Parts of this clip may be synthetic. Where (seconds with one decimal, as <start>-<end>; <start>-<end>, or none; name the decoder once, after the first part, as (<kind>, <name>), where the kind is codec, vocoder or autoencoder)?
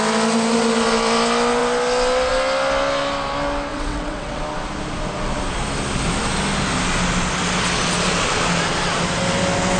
3.7-4.4 (vocoder, WaveNeXt)